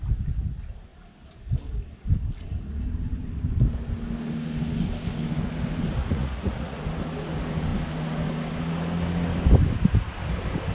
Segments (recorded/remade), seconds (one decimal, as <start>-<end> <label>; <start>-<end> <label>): 0.0-6.0 recorded; 6.0-6.8 remade; 6.8-10.7 recorded